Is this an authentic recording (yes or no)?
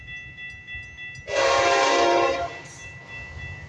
yes